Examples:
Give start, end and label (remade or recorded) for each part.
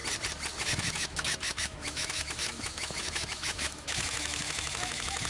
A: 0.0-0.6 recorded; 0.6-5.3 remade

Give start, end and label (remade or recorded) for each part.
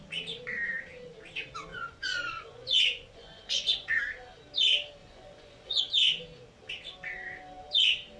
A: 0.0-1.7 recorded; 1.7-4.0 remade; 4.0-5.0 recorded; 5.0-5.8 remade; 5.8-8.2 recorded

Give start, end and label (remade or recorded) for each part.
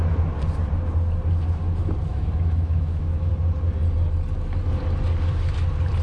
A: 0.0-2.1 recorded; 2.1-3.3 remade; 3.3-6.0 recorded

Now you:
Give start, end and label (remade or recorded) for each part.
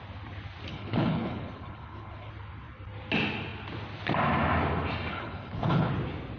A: 0.0-0.7 recorded; 0.7-2.3 remade; 2.3-5.1 recorded; 5.1-5.9 remade; 5.9-6.4 recorded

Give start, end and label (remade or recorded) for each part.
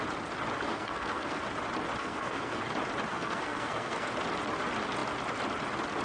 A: 0.0-0.7 recorded; 0.7-1.4 remade; 1.4-2.0 recorded; 2.0-2.6 remade; 2.6-3.1 recorded; 3.1-4.1 remade; 4.1-6.0 recorded